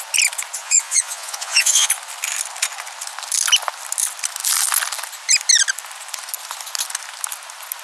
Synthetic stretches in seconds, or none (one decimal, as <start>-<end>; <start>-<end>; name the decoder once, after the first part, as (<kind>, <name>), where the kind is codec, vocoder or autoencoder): 0.6-1.9 (vocoder, Vocos)